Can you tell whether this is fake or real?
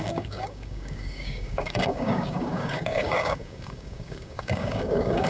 fake